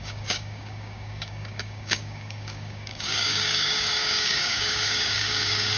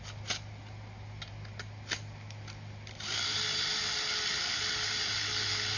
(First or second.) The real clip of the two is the second